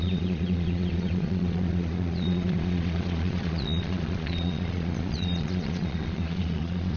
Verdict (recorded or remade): remade